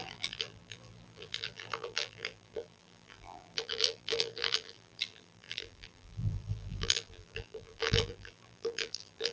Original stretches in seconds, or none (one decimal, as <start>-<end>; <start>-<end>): none